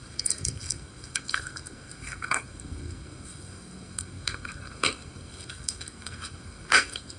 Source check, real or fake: fake